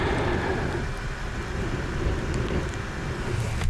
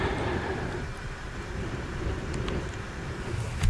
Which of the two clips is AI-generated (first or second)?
second